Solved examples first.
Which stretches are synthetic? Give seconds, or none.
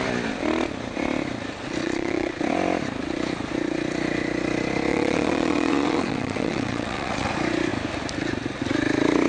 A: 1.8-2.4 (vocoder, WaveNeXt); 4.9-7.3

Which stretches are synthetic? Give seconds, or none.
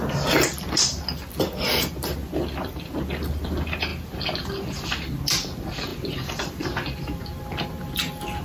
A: none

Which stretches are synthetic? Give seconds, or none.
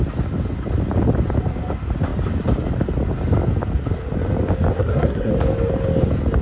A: 4.7-5.3 (codec, SNAC)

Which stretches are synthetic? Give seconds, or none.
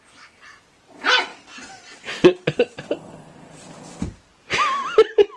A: 4.4-5.4 (vocoder, BigVGAN v2)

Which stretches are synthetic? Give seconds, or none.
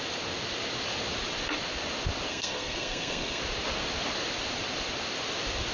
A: 2.3-3.4 (codec, SNAC)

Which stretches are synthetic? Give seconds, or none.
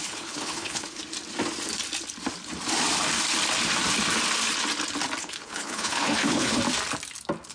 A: 0.0-1.0 (codec, HILCodec); 5.2-6.6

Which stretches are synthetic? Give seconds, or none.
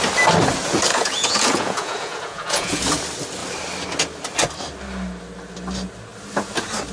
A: 0.9-2.8 (vocoder, Vocos)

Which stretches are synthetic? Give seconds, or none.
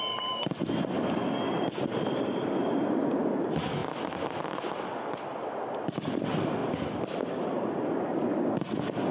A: none